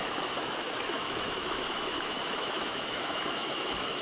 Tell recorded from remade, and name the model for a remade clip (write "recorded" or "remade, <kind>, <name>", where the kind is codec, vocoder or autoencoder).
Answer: remade, autoencoder, DAC-VAE